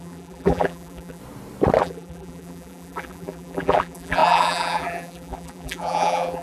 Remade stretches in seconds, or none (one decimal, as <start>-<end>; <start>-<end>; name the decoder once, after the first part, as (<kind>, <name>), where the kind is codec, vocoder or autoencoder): 0.0-1.2 (vocoder, BigVGAN v2); 1.8-6.4